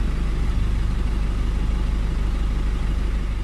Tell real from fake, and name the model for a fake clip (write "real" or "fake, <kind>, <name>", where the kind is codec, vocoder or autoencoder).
real